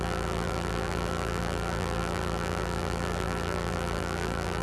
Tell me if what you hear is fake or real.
fake